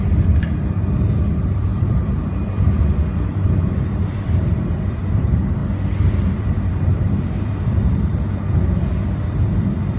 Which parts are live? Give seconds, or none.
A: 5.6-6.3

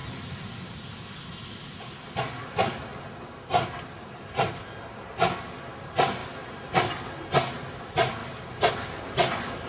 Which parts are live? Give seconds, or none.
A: 0.0-6.2; 6.9-9.7

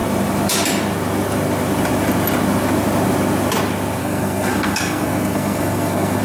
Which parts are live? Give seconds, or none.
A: 0.0-4.0

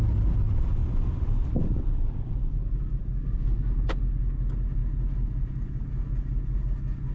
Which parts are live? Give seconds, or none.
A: 0.0-0.8; 3.0-7.1